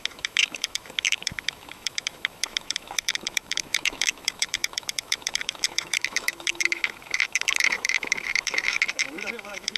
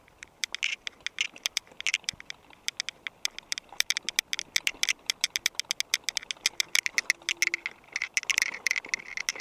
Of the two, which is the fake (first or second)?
first